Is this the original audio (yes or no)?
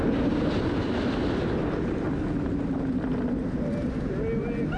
yes